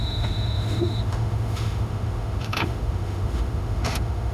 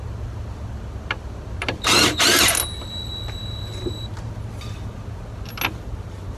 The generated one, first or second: first